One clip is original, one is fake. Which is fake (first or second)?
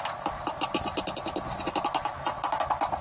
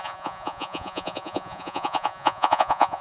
second